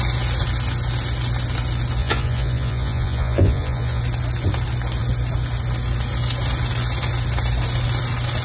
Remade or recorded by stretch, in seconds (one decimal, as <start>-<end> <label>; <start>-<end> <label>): 0.0-2.0 recorded; 2.0-4.0 remade; 4.0-8.4 recorded

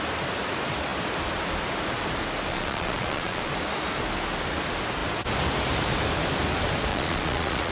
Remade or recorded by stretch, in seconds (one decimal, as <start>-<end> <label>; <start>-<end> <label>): 0.0-2.5 recorded; 2.5-3.4 remade; 3.4-6.9 recorded; 6.9-7.7 remade

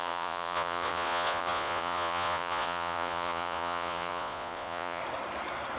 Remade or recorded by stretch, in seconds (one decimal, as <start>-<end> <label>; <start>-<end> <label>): 0.0-5.0 remade; 5.0-5.8 recorded

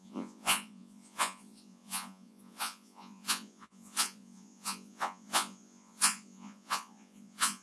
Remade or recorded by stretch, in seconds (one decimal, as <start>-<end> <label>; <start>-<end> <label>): 0.0-7.6 remade